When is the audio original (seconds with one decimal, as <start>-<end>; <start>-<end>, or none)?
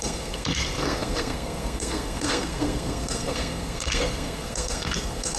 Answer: none